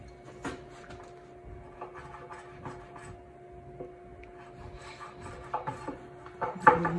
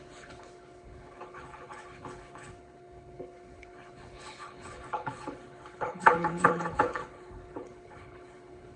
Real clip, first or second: first